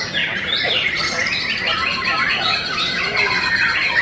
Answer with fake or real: real